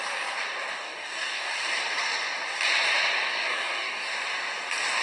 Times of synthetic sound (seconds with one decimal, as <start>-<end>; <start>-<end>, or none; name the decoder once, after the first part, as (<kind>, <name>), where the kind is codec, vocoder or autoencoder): 0.7-1.5 (codec, DAC); 3.3-4.2